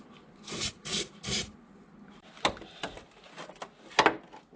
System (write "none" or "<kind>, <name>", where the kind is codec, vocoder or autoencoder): none